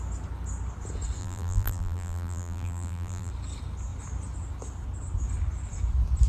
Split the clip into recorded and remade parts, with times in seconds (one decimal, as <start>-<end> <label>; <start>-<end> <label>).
0.0-1.2 recorded; 1.2-3.3 remade; 3.3-6.3 recorded